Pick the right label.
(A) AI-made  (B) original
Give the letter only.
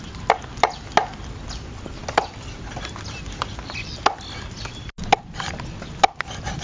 B